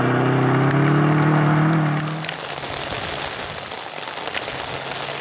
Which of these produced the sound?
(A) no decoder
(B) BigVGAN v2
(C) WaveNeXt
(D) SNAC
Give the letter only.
A